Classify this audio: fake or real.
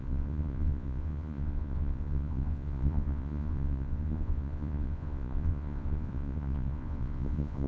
fake